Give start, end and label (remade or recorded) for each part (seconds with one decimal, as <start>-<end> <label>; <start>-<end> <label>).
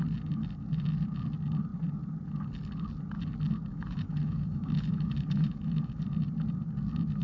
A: 0.0-3.7 recorded; 3.7-6.0 remade; 6.0-7.2 recorded